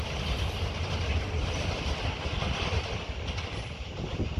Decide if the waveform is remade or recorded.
recorded